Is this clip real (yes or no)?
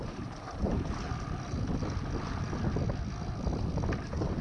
yes